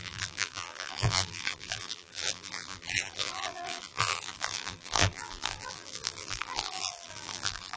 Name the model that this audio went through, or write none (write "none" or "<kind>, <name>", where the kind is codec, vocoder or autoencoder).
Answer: vocoder, BigVGAN v2